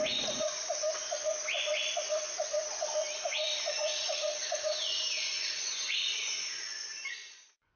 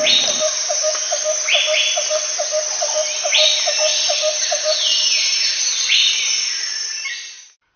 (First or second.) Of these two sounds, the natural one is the second